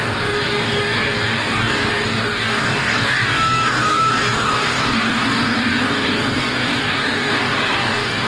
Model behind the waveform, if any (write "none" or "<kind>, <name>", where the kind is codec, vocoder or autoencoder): codec, DAC